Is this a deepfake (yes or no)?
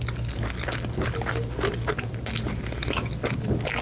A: no